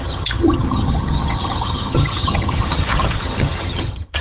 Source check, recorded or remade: remade